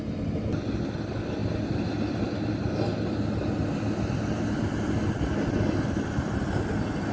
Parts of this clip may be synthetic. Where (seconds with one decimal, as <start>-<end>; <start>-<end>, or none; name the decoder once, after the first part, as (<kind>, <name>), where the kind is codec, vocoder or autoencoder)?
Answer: none